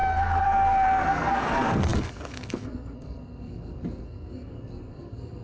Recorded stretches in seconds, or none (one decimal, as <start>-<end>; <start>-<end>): none